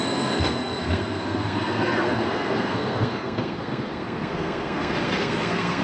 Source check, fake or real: fake